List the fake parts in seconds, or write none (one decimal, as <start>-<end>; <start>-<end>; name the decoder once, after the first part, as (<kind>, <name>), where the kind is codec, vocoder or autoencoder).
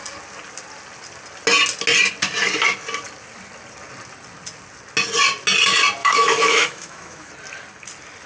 6.0-7.3 (autoencoder, DAC-VAE)